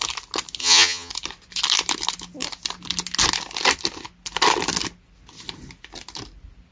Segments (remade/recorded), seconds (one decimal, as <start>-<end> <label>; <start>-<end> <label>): 0.0-0.6 recorded; 0.6-1.1 remade; 1.1-6.7 recorded